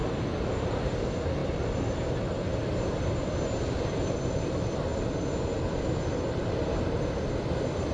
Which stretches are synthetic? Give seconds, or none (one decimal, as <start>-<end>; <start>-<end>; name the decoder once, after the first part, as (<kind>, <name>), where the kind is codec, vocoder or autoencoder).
none